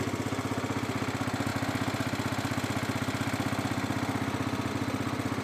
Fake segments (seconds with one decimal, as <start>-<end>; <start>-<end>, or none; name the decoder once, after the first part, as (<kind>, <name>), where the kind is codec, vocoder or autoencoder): none